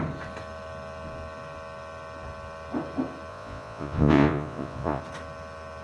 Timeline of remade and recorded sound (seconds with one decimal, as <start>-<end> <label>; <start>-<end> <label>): 0.0-3.3 recorded; 3.3-5.0 remade; 5.0-5.8 recorded